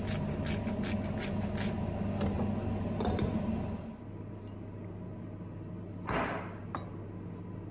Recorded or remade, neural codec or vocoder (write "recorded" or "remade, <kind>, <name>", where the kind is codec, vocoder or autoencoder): recorded